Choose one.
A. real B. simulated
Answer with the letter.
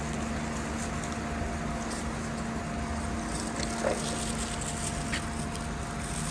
A